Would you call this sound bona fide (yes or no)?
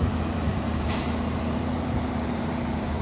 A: no